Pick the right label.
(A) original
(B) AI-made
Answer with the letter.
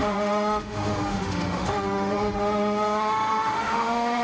B